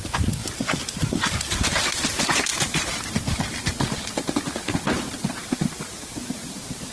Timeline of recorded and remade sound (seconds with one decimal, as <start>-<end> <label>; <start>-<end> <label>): 0.0-6.9 recorded